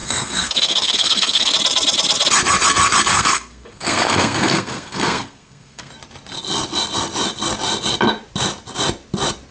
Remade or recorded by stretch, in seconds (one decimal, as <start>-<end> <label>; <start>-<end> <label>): 0.0-1.5 remade; 1.5-3.1 recorded; 3.1-5.9 remade; 5.9-9.5 recorded